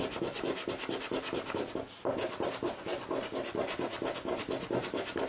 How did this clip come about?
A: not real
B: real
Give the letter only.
B